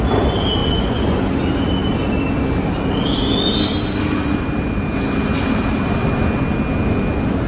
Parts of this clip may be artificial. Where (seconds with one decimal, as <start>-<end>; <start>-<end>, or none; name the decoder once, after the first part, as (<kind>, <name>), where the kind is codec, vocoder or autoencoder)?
0.6-1.3 (vocoder, Vocos)